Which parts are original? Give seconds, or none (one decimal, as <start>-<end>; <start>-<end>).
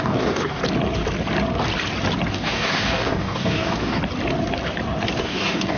0.6-2.3; 4.0-5.2